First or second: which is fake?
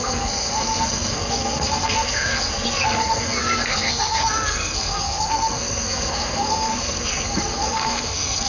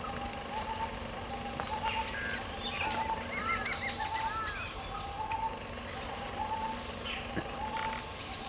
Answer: first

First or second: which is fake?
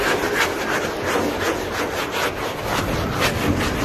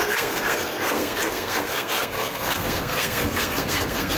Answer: second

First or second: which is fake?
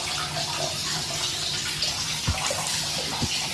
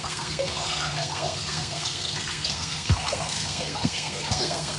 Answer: second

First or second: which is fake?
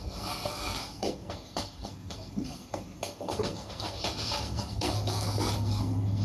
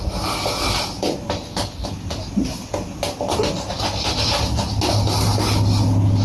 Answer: first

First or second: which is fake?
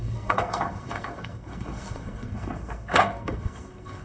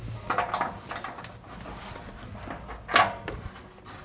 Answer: first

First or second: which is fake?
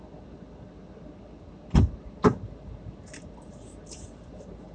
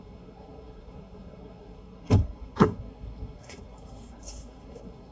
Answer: second